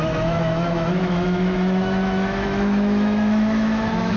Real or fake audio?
fake